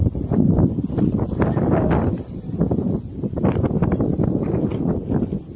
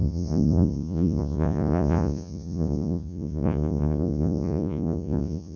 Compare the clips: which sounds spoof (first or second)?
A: second